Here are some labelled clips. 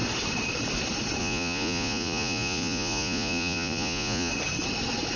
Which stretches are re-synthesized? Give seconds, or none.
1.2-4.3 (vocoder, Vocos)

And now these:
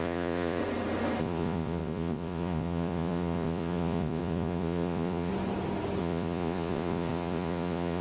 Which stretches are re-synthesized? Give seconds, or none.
0.0-0.6 (vocoder, Vocos); 1.2-5.3; 6.0-8.0

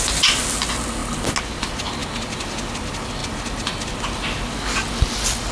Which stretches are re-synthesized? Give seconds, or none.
none